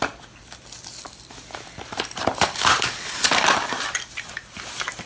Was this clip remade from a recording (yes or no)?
yes